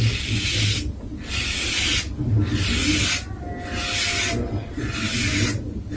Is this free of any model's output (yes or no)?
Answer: yes